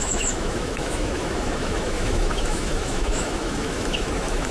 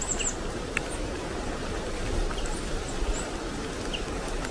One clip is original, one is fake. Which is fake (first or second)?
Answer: first